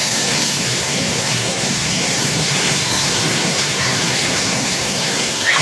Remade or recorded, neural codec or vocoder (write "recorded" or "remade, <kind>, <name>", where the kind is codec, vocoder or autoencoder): remade, codec, SNAC